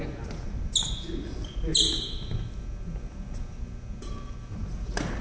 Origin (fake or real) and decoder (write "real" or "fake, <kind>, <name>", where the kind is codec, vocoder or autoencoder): real